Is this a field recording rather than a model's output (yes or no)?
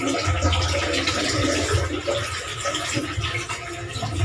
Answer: yes